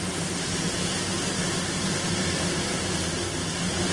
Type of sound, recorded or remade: recorded